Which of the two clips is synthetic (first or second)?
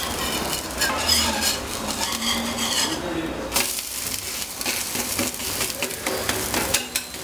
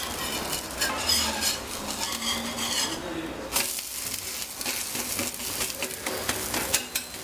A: first